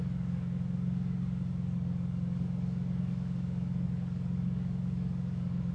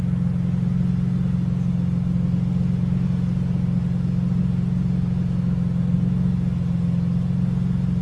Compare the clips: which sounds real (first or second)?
second